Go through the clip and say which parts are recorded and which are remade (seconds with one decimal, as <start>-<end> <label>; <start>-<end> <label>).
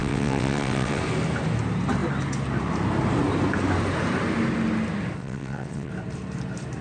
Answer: 0.0-1.0 remade; 1.0-5.2 recorded; 5.2-5.9 remade; 5.9-6.8 recorded